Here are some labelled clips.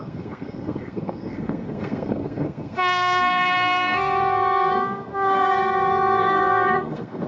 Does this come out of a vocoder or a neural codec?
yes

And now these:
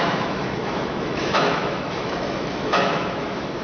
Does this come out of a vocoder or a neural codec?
yes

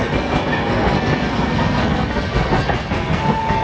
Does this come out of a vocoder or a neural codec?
yes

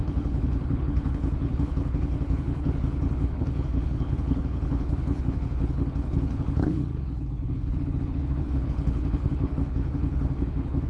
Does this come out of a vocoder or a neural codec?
yes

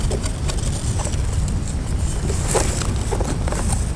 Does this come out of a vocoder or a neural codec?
no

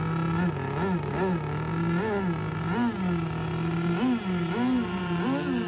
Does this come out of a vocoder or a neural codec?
no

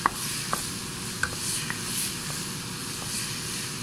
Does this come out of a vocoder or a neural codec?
no